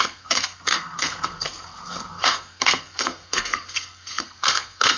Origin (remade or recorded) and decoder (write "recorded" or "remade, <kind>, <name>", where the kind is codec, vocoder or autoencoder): remade, codec, SNAC